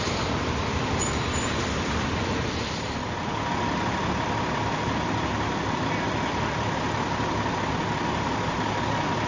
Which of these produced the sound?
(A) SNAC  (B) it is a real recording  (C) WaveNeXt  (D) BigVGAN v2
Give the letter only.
B